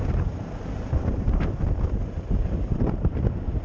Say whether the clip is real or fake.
fake